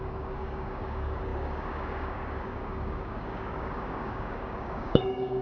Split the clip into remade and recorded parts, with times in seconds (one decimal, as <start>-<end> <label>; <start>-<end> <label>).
0.0-5.4 remade